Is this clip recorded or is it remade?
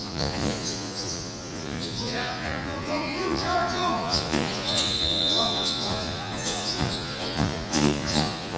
remade